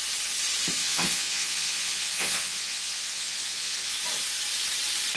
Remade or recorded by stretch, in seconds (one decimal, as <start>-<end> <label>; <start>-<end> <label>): 0.0-0.8 recorded; 0.8-3.9 remade; 3.9-5.2 recorded